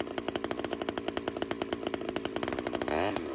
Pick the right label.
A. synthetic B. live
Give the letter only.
B